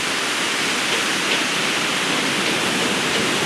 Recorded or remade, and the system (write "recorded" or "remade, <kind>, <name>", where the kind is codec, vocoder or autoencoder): recorded